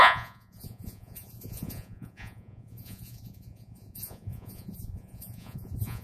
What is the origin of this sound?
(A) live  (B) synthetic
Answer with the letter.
B